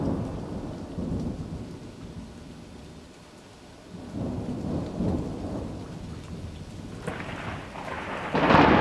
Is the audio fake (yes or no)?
no